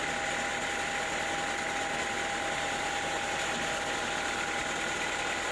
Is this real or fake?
real